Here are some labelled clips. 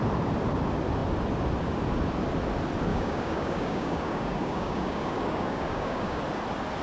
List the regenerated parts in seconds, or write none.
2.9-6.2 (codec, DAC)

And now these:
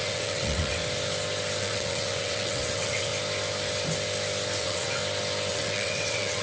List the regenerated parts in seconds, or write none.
0.0-0.8 (vocoder, WaveNeXt); 1.6-3.1; 4.6-5.0; 5.5-6.4

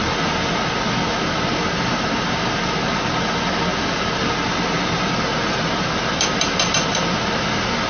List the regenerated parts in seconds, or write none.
none